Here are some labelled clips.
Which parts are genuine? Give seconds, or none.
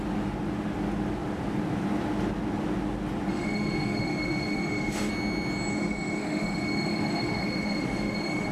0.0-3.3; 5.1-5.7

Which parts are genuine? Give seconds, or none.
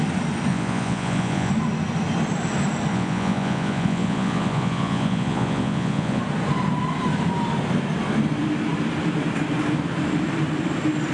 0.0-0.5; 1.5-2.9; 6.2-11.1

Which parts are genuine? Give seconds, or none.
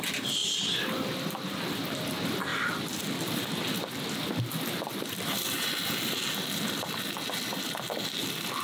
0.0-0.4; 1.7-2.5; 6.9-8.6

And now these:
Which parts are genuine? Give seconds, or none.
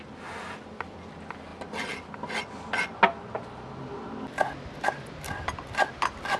0.0-6.4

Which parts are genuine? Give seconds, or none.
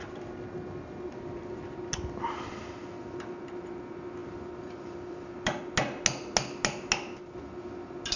0.0-4.2; 5.6-8.2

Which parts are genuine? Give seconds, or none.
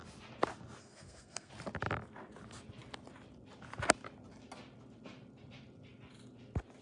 0.0-0.8; 1.5-6.8